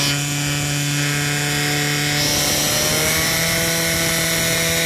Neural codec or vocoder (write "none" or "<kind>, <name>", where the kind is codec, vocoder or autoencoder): none